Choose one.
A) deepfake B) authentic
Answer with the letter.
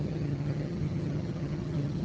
A